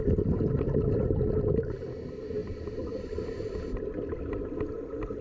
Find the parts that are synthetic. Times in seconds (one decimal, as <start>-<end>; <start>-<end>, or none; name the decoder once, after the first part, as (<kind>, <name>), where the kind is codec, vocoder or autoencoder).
2.4-3.2 (vocoder, BigVGAN v2)